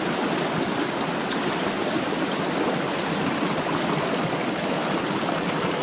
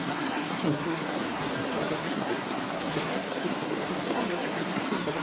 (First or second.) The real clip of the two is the first